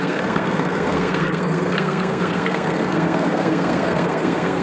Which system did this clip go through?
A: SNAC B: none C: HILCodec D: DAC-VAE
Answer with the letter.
A